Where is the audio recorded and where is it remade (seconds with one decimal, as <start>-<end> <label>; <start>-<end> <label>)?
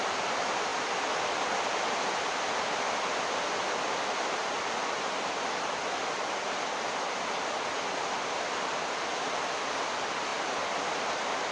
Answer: 0.0-11.5 recorded